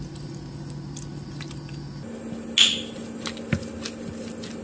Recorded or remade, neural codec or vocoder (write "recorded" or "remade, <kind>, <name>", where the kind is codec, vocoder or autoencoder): recorded